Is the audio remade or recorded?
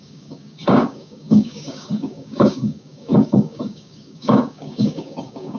remade